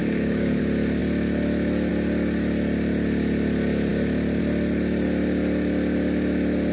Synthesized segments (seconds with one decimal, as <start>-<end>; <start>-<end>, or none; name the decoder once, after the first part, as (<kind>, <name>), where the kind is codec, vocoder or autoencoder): 0.0-0.6 (codec, DAC)